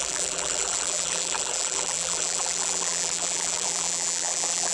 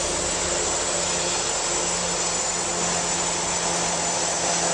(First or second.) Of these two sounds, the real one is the second